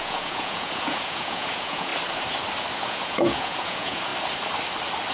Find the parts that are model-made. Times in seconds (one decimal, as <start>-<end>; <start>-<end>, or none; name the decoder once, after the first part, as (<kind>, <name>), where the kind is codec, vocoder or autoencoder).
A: 0.0-1.9 (vocoder, Vocos); 2.8-4.1